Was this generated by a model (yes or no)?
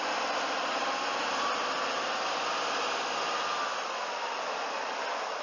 no